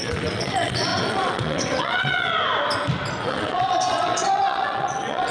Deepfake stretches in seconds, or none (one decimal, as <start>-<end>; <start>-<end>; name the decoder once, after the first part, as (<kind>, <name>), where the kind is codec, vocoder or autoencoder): 0.0-2.3 (vocoder, WaveNeXt); 3.2-5.3

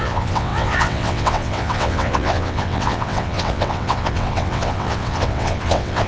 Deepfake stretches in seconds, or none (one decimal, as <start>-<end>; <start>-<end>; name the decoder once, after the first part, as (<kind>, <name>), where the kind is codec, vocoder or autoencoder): 0.0-6.1 (vocoder, WaveNeXt)

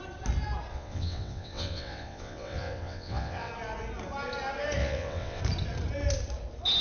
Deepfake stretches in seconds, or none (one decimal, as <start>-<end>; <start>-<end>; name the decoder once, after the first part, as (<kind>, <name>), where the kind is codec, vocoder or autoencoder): 0.7-3.5 (vocoder, WaveNeXt); 4.8-5.4

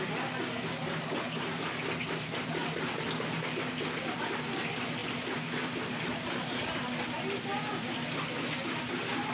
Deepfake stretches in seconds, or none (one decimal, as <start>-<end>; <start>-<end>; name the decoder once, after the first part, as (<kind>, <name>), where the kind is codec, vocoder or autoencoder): none